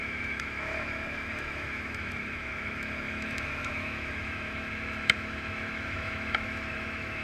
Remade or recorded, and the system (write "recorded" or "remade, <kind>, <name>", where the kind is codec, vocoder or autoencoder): remade, autoencoder, DAC-VAE